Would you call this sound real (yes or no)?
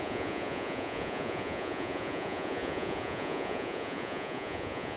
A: no